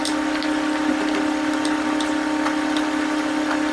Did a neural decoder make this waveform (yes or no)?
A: no